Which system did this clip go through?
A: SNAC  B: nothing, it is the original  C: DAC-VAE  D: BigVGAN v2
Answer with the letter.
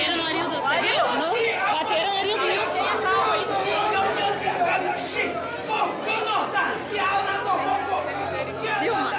B